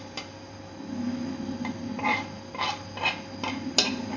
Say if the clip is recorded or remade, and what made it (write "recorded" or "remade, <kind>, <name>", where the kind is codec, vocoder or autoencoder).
recorded